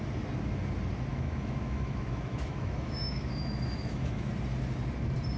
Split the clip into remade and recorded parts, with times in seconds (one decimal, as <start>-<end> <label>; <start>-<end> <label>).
0.0-1.1 recorded; 1.1-4.3 remade; 4.3-5.4 recorded